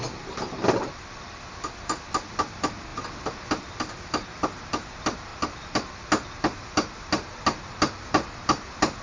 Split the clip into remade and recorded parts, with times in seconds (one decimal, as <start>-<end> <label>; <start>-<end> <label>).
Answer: 0.0-9.0 recorded